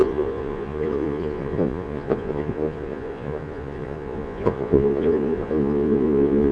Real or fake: fake